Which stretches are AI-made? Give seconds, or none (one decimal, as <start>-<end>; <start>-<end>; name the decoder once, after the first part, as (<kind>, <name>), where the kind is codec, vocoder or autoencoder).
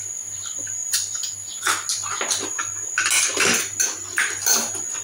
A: none